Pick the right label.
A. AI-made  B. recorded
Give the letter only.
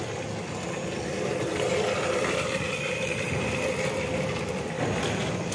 B